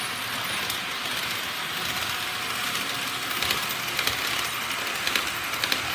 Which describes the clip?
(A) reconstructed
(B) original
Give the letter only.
B